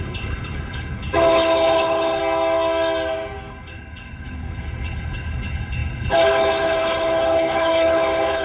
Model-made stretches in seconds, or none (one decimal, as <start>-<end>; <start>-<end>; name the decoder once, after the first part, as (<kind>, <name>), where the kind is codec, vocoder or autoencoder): 0.0-2.2 (codec, HILCodec); 3.5-8.4